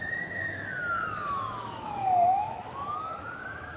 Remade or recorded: remade